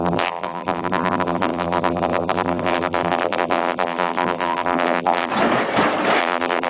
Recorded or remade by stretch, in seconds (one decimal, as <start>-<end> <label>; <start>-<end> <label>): 0.0-5.3 remade; 5.3-6.2 recorded; 6.2-6.7 remade